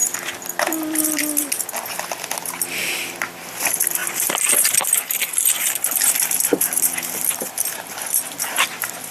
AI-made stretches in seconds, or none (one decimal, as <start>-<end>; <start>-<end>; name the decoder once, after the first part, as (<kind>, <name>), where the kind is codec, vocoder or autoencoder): 0.0-1.5 (vocoder, BigVGAN v2); 4.0-7.1